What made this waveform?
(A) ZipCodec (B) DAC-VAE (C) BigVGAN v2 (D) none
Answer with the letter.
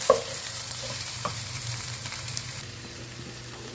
C